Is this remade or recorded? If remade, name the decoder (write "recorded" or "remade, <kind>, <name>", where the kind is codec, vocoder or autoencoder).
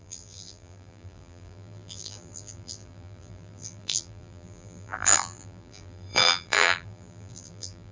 remade, vocoder, BigVGAN v2